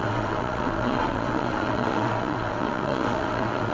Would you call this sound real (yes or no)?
no